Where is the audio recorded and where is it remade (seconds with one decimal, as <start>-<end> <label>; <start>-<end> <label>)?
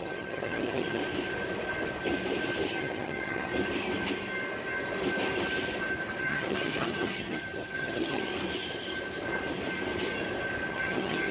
0.0-1.0 remade; 1.0-2.7 recorded; 2.7-3.5 remade; 3.5-6.2 recorded; 6.2-8.3 remade; 8.3-10.7 recorded; 10.7-11.3 remade